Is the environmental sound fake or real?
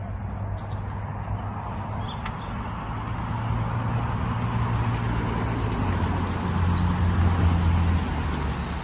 real